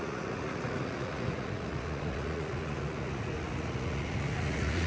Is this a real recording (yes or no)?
no